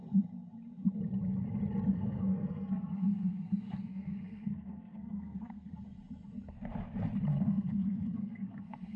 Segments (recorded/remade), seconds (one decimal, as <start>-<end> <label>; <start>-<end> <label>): 0.0-1.9 recorded; 1.9-5.7 remade; 5.7-7.3 recorded; 7.3-9.0 remade

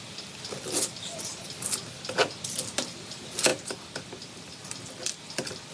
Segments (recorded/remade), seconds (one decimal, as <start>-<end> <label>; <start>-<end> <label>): 0.0-5.7 recorded

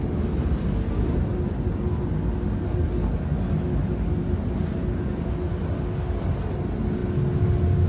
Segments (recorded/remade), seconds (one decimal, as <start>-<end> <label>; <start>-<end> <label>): 0.0-7.9 recorded

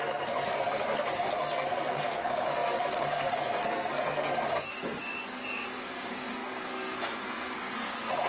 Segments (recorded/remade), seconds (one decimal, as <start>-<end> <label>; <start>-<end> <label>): 0.0-8.3 remade

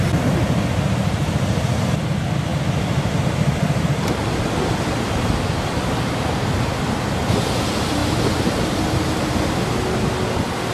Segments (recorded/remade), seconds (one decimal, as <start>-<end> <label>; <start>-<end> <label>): 0.0-10.7 recorded

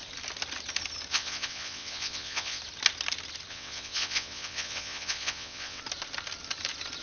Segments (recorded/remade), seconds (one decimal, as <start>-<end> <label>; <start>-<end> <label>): 0.0-1.1 recorded; 1.1-2.6 remade; 2.6-3.5 recorded; 3.5-5.8 remade; 5.8-7.0 recorded